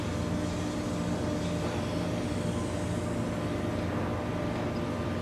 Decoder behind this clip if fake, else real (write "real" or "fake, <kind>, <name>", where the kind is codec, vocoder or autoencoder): real